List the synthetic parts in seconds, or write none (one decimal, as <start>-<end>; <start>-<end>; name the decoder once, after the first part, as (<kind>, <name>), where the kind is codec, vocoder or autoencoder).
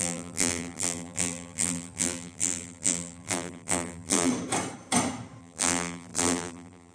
0.0-4.3 (vocoder, BigVGAN v2); 5.4-6.9